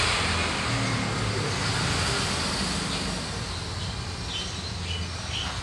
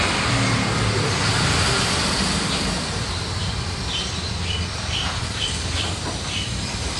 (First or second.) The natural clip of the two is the first